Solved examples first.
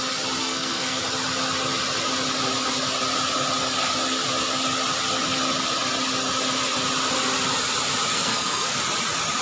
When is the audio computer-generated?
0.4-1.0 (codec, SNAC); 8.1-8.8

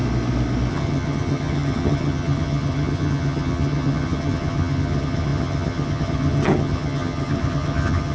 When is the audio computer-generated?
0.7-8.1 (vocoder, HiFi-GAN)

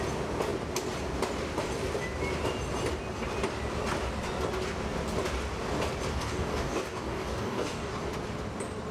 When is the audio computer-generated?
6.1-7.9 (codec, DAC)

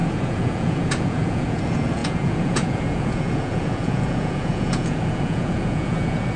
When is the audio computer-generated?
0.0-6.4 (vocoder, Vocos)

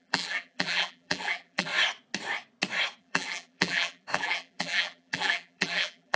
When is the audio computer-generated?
0.0-1.7 (vocoder, BigVGAN v2); 3.0-6.2

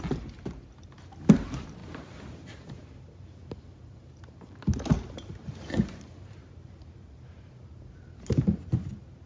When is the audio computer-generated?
1.8-3.5 (vocoder, BigVGAN v2); 3.9-8.7